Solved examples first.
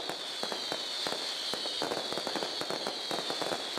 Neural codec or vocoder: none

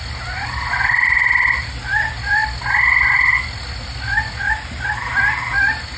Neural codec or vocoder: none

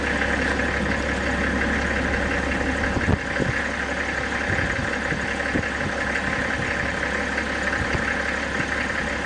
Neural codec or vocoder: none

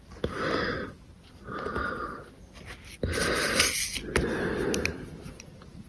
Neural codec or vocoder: none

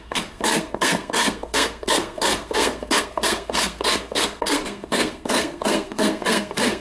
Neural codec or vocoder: codec, SNAC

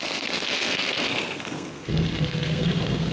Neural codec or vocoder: codec, SNAC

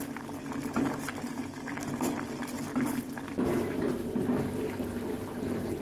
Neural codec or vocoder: none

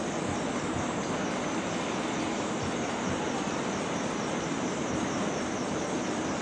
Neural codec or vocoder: none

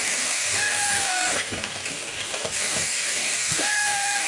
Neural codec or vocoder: codec, DAC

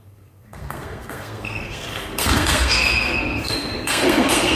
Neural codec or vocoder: codec, SNAC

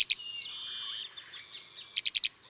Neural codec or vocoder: none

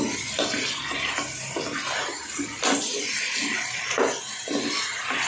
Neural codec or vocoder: none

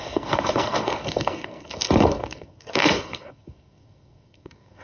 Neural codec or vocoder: codec, SNAC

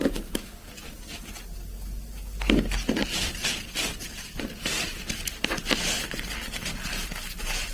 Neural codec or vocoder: none